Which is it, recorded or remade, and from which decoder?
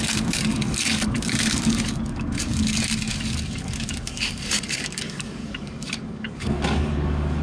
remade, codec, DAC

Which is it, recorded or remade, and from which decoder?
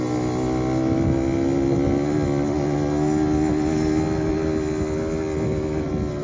recorded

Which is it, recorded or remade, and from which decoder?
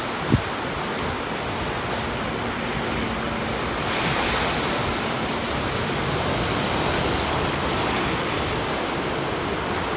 recorded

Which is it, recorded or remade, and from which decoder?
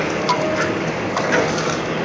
remade, codec, DAC